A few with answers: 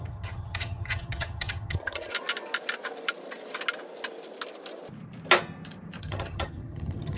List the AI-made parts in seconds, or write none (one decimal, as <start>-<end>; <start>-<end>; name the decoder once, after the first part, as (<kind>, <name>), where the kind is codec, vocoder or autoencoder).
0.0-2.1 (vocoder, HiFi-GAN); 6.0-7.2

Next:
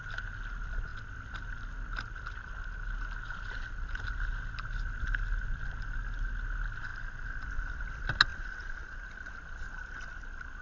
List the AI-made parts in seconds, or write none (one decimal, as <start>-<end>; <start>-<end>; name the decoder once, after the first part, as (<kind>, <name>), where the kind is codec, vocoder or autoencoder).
none

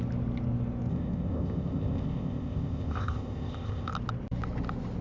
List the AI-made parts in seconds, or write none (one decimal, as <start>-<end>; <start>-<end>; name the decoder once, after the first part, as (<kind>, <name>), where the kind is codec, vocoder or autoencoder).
0.9-3.9 (codec, ZipCodec)

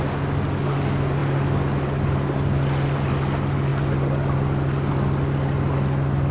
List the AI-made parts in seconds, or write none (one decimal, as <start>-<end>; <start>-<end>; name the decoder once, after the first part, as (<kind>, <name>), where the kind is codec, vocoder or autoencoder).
none